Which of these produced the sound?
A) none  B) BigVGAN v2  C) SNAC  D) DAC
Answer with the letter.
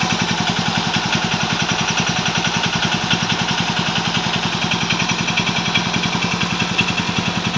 A